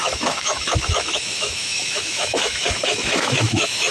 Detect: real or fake fake